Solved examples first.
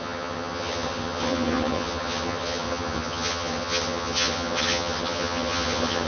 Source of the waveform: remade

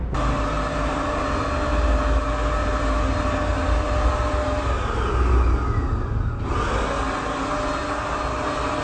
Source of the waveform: recorded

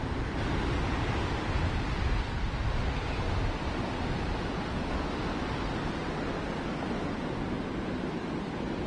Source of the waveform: recorded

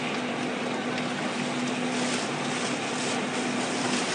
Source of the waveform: recorded